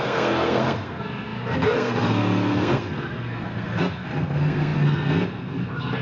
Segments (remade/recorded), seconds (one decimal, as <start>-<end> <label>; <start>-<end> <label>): 0.0-6.0 remade